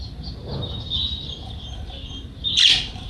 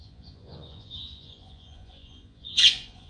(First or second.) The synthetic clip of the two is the second